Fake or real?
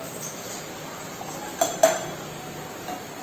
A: real